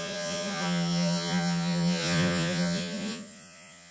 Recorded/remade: remade